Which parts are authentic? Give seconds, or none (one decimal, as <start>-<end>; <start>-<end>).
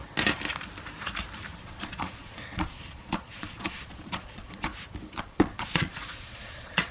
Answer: 0.0-1.6; 4.7-5.2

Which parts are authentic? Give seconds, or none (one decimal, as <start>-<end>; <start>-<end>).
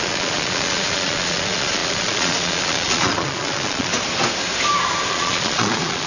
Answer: 3.9-5.1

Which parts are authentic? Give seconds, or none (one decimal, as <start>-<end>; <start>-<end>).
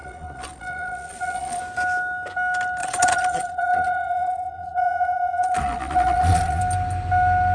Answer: 1.6-2.8; 6.6-7.5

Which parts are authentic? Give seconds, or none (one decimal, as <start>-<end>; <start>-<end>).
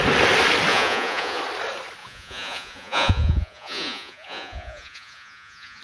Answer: 0.0-0.7; 1.4-2.0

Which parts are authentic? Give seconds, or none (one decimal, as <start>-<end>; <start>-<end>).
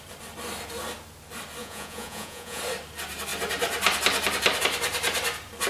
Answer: 0.0-1.6; 2.6-5.7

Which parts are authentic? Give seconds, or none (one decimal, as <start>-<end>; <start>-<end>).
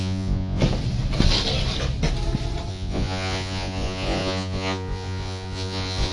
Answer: 0.6-2.7